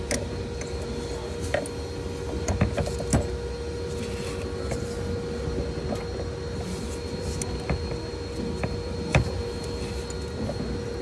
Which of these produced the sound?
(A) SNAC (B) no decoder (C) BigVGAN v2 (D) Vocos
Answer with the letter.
B